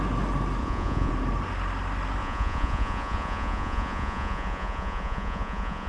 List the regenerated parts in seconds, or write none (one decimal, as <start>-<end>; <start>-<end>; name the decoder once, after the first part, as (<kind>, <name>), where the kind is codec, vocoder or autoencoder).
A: 0.6-1.1 (vocoder, Vocos); 2.2-5.9

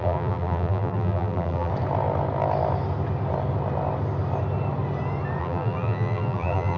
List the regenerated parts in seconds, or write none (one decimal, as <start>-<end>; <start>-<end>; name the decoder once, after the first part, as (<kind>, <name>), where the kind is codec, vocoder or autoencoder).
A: 0.0-1.7 (vocoder, BigVGAN v2); 5.4-6.8

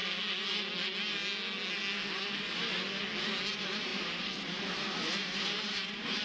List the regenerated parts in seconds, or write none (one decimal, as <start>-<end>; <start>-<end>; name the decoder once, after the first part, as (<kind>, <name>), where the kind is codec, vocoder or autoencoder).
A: 2.4-3.0 (vocoder, BigVGAN v2); 3.5-6.2

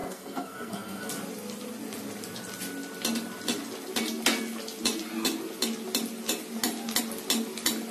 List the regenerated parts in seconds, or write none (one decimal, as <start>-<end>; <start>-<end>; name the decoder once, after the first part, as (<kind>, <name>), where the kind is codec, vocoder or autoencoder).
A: 0.0-1.1 (codec, SNAC)